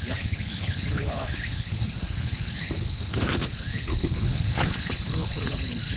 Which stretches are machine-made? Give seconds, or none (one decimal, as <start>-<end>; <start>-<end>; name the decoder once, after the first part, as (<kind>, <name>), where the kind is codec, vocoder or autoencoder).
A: 0.0-6.0 (codec, HILCodec)